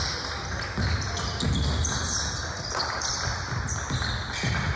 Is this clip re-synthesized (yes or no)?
no